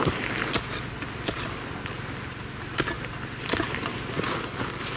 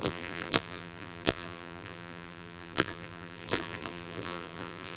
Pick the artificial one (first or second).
second